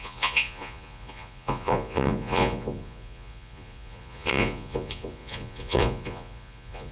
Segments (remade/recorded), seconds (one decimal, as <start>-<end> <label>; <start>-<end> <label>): 0.0-6.9 remade